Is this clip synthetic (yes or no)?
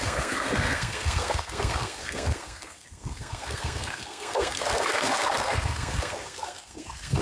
yes